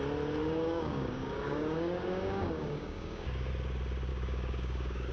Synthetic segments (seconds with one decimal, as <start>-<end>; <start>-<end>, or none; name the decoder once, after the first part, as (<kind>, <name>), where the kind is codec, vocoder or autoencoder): 0.4-3.5 (codec, DAC); 4.1-5.1

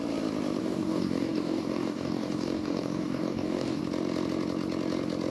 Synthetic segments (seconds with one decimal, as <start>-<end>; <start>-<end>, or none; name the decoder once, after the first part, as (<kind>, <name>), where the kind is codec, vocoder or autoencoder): 0.6-3.8 (codec, DAC)